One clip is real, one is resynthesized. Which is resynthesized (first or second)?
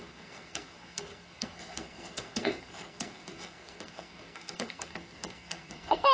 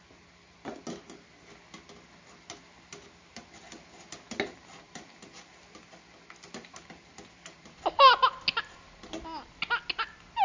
first